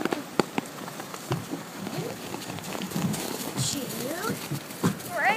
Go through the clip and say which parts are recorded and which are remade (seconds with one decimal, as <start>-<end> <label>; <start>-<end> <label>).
0.0-1.1 recorded; 1.1-4.3 remade; 4.3-5.4 recorded